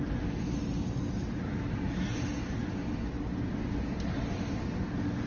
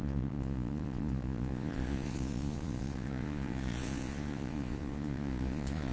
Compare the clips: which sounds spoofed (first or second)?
second